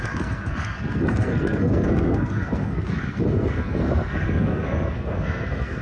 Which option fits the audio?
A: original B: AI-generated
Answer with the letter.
B